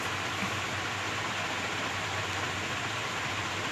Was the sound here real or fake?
real